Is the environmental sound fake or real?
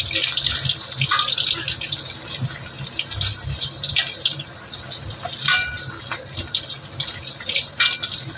real